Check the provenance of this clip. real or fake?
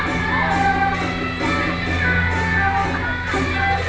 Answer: real